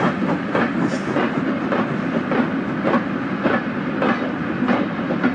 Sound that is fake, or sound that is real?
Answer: real